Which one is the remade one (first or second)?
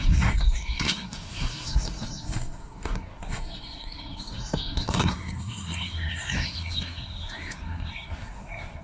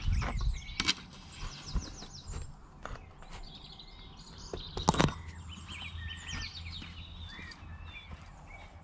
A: first